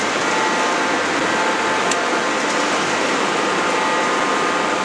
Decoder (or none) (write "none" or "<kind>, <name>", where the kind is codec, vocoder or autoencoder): none